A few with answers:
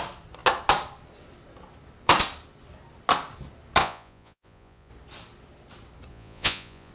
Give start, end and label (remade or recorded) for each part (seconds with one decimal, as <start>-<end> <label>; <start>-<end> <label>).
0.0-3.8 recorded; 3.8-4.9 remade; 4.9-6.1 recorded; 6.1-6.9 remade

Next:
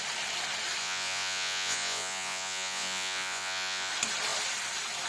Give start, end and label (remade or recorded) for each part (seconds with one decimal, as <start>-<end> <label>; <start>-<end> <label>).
0.0-0.8 recorded; 0.8-3.9 remade; 3.9-5.1 recorded

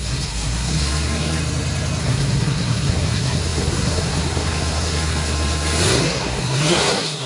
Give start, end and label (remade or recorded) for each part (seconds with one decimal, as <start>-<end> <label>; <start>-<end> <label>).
0.0-1.4 remade; 1.4-2.0 recorded; 2.0-7.3 remade

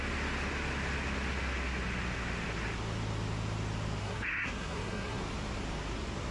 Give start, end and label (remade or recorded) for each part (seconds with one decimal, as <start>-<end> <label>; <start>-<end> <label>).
0.0-4.0 recorded; 4.0-5.2 remade; 5.2-6.3 recorded

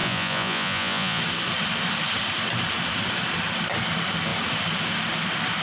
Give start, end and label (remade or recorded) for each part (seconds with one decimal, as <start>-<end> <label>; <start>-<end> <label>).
0.0-1.2 remade; 1.2-5.6 recorded